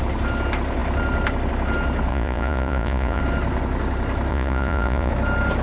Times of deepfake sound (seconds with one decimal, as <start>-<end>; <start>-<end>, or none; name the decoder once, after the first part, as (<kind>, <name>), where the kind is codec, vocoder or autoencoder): 2.1-3.2 (vocoder, Vocos); 4.3-5.1